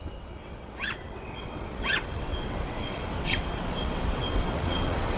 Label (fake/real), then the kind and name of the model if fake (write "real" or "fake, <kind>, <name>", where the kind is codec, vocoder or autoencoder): fake, vocoder, WaveNeXt